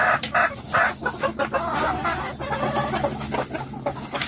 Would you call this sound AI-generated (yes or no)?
no